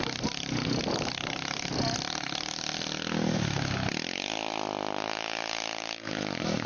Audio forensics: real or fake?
real